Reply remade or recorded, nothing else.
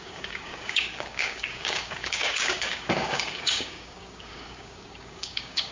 remade